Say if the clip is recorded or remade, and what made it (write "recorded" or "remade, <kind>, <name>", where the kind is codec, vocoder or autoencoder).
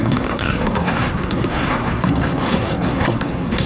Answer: remade, codec, SNAC